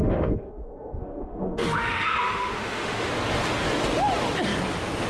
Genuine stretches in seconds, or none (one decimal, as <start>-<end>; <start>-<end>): 3.1-5.1